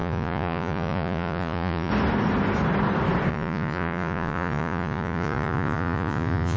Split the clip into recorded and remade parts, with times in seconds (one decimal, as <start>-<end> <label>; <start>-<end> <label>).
0.0-1.9 remade; 1.9-3.3 recorded; 3.3-6.6 remade